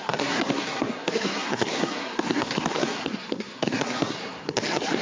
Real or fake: fake